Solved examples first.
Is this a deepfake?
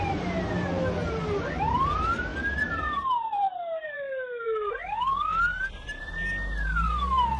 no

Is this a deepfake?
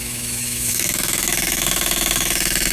yes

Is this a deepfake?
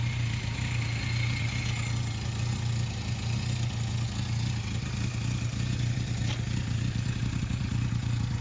no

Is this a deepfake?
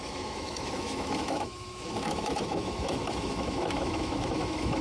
yes